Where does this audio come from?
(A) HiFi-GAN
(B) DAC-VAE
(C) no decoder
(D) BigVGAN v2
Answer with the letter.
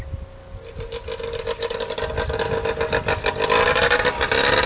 C